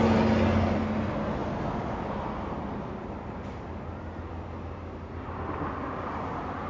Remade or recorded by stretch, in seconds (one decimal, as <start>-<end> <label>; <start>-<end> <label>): 0.0-6.7 recorded